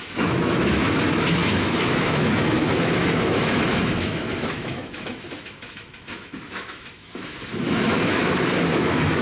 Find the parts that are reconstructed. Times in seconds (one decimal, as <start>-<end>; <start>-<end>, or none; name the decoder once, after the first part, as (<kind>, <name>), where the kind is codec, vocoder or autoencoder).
0.0-9.2 (autoencoder, DAC-VAE)